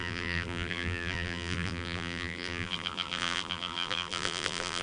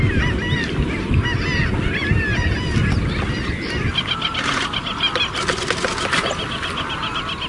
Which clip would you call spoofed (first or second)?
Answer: first